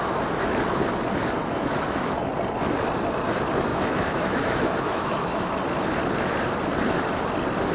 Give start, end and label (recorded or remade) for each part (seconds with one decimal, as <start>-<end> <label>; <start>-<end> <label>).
0.0-1.4 recorded; 1.4-2.3 remade; 2.3-3.7 recorded; 3.7-5.5 remade; 5.5-7.7 recorded